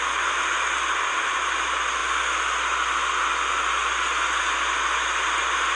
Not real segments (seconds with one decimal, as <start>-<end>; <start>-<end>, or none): none